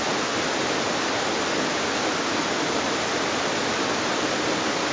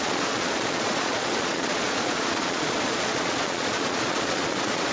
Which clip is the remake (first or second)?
second